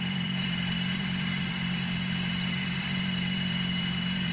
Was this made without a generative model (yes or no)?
no